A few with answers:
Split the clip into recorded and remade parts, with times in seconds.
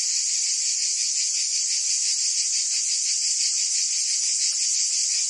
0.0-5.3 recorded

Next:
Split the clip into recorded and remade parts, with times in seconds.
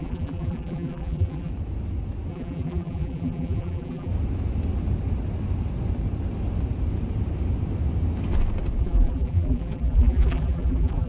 0.0-1.5 remade; 1.5-2.3 recorded; 2.3-4.1 remade; 4.1-8.8 recorded; 8.8-11.1 remade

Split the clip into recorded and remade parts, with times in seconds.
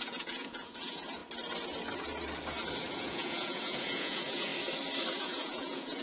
0.0-1.2 remade; 1.2-2.9 recorded; 2.9-4.5 remade; 4.5-5.2 recorded; 5.2-6.0 remade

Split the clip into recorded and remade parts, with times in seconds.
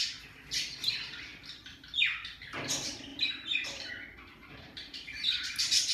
0.0-3.1 recorded; 3.1-3.9 remade; 3.9-4.4 recorded; 4.4-5.5 remade; 5.5-5.9 recorded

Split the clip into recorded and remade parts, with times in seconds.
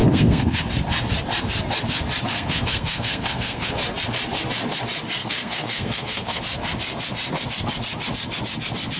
0.0-0.7 remade; 0.7-2.3 recorded; 2.3-3.8 remade; 3.8-5.2 recorded; 5.2-6.4 remade; 6.4-9.0 recorded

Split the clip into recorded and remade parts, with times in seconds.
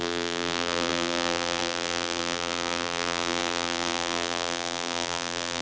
0.0-5.6 remade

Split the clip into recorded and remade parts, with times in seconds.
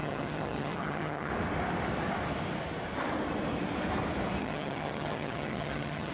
0.0-1.3 remade; 1.3-4.4 recorded; 4.4-6.1 remade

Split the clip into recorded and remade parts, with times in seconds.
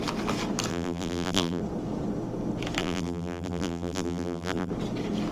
0.0-0.7 recorded; 0.7-1.6 remade; 1.6-2.8 recorded; 2.8-4.7 remade; 4.7-5.3 recorded